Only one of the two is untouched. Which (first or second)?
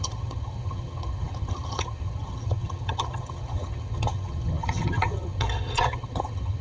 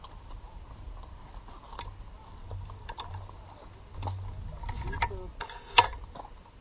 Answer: second